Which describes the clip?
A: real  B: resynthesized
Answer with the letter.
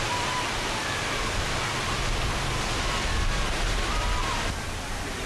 A